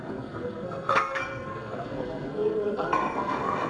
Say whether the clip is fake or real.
fake